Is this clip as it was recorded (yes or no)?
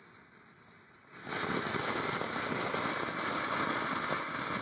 yes